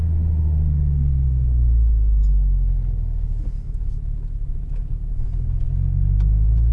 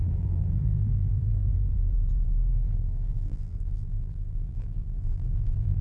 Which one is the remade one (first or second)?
second